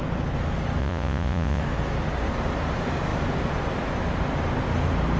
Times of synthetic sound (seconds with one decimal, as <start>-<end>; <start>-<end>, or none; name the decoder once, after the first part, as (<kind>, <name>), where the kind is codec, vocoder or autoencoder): 0.8-1.6 (vocoder, Vocos)